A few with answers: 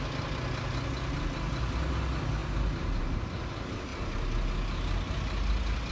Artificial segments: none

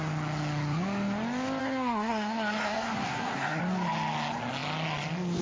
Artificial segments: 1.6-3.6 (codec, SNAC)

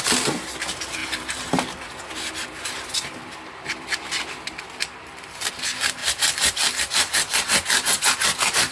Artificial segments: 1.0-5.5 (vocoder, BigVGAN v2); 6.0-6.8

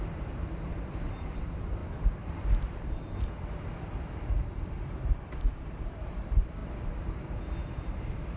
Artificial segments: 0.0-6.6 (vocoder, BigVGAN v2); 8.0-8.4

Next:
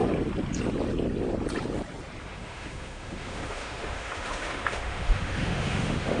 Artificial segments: 2.2-6.2 (autoencoder, DAC-VAE)

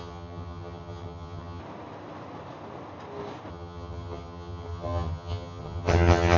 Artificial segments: 0.0-1.6 (vocoder, HiFi-GAN); 3.5-6.4

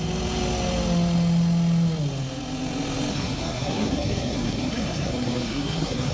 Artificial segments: 3.1-6.1 (codec, SNAC)